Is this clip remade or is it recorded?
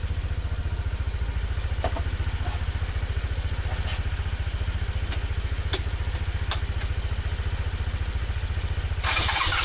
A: recorded